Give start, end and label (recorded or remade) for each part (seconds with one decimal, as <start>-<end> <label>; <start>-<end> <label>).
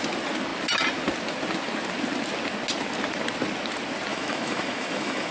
0.0-4.1 recorded; 4.1-5.3 remade